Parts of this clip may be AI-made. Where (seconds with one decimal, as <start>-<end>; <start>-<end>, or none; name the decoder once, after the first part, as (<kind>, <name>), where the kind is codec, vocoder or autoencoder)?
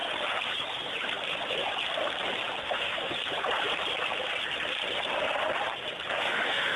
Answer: 2.6-3.1 (autoencoder, DAC-VAE); 6.2-6.8